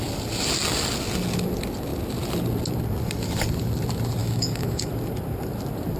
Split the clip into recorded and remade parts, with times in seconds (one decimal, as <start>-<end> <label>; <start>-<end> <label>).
0.0-4.2 recorded; 4.2-4.9 remade; 4.9-6.0 recorded